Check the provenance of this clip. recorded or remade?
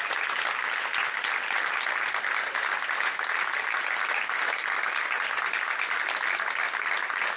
recorded